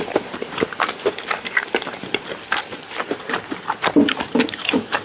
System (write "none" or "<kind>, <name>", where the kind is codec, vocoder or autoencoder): vocoder, BigVGAN v2